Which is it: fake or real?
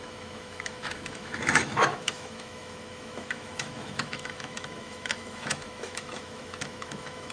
fake